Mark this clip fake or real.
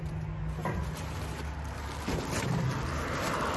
real